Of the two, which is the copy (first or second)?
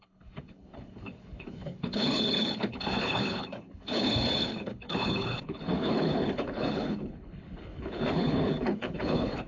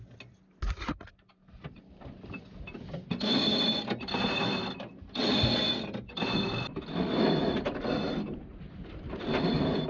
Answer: first